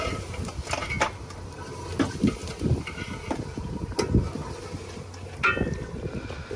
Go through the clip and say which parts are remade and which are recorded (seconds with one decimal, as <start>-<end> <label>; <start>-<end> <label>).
0.0-6.6 recorded